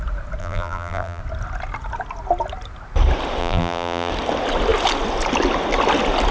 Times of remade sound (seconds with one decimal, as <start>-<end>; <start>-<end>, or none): 0.4-1.2; 3.4-4.1